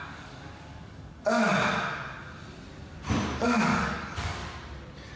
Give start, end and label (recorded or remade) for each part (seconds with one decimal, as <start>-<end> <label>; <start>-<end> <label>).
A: 0.0-1.5 remade; 1.5-3.4 recorded; 3.4-4.4 remade; 4.4-5.2 recorded